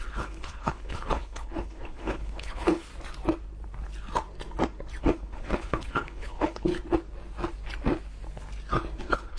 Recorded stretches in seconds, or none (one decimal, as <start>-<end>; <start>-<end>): 2.9-5.0; 6.7-9.0